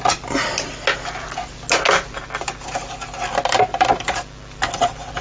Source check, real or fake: real